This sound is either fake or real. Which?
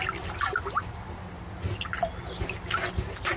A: real